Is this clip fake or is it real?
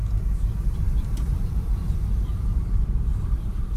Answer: fake